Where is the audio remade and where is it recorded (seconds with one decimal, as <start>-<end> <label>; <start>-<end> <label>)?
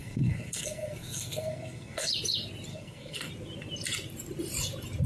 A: 0.0-2.1 remade; 2.1-2.7 recorded; 2.7-3.3 remade; 3.3-5.1 recorded